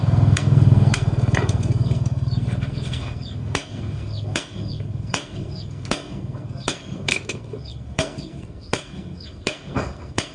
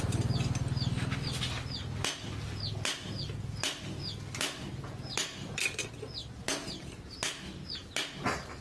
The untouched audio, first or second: second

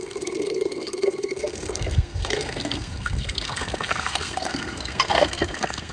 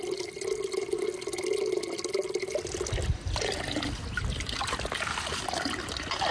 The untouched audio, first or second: second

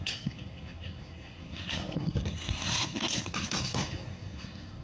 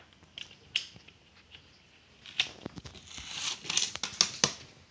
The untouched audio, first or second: second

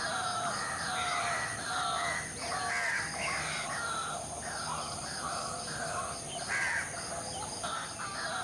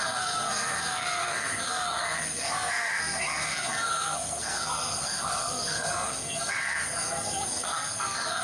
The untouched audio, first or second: first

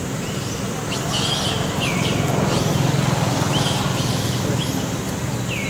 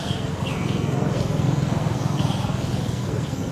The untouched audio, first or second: first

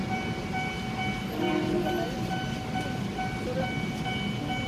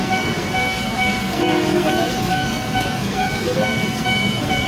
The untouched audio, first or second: first